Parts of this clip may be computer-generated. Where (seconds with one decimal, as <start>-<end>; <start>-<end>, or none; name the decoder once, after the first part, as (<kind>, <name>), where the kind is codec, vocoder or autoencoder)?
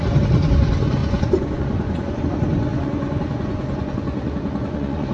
1.0-2.2 (vocoder, Vocos); 2.7-5.1